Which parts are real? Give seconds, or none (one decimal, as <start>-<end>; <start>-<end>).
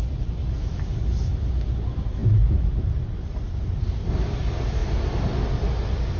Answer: 0.0-6.2